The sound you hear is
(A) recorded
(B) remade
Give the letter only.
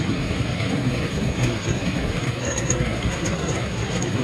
B